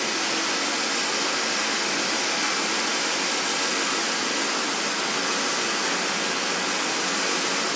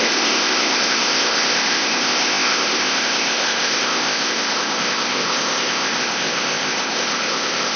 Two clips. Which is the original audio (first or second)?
first